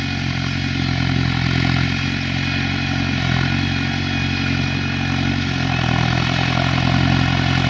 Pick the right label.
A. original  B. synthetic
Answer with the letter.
A